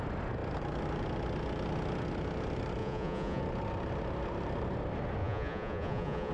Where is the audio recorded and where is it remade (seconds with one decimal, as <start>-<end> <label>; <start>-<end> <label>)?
0.0-2.8 recorded; 2.8-3.4 remade; 3.4-5.2 recorded; 5.2-6.3 remade